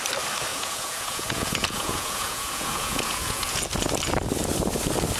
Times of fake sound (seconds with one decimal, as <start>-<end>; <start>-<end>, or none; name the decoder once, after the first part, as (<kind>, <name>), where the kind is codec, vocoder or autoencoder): 0.5-3.6 (vocoder, Vocos)